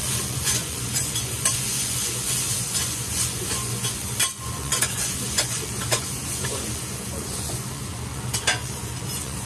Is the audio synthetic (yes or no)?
yes